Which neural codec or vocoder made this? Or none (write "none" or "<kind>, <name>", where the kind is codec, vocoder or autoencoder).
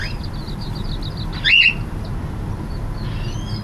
none